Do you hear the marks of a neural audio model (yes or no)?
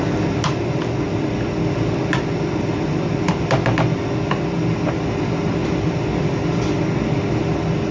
no